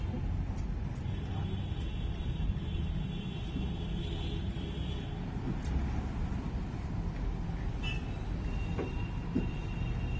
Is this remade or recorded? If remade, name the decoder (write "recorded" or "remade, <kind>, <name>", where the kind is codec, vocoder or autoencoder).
recorded